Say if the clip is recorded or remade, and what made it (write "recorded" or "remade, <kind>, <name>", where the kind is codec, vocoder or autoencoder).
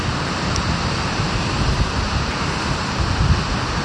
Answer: remade, vocoder, BigVGAN v2